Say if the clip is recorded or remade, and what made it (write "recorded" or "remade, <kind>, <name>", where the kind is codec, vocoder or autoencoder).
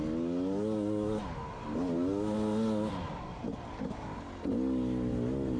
recorded